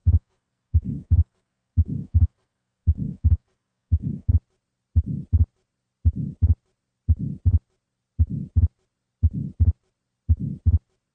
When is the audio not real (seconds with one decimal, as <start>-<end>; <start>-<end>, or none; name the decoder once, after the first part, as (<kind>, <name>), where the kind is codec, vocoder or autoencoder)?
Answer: 0.0-4.3 (codec, SNAC)